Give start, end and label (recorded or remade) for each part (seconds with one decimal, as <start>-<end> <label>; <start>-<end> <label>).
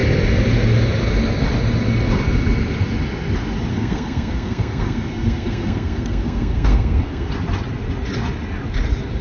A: 0.0-3.7 recorded; 3.7-7.3 remade; 7.3-9.2 recorded